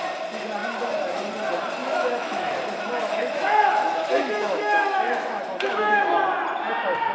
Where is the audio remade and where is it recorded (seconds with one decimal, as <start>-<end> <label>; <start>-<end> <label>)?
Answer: 0.0-1.8 recorded; 1.8-2.6 remade; 2.6-3.0 recorded; 3.0-6.1 remade; 6.1-7.1 recorded